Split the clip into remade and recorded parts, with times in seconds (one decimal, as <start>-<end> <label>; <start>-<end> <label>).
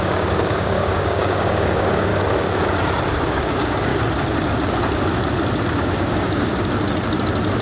0.0-2.1 remade; 2.1-3.1 recorded; 3.1-3.9 remade; 3.9-5.7 recorded; 5.7-6.5 remade; 6.5-7.6 recorded